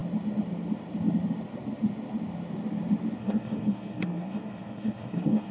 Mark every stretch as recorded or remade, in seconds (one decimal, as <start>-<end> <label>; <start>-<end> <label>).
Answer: 0.0-3.2 recorded; 3.2-5.5 remade